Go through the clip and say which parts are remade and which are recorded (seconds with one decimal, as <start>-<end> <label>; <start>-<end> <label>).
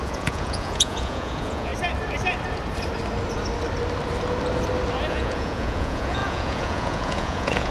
0.0-1.7 remade; 1.7-5.1 recorded; 5.1-7.7 remade